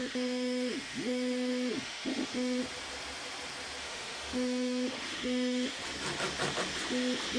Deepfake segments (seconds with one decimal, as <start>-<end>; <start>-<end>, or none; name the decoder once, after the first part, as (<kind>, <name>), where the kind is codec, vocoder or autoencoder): 0.0-2.6 (autoencoder, DAC-VAE); 3.8-5.7